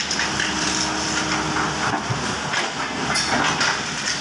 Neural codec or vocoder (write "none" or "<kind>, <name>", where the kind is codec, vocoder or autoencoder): none